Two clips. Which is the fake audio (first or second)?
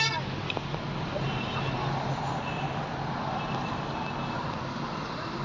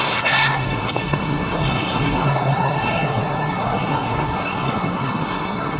second